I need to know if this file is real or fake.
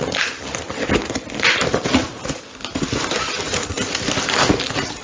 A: real